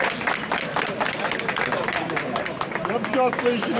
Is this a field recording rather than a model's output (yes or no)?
yes